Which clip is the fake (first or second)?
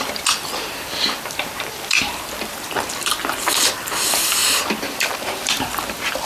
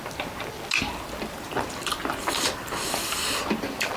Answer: first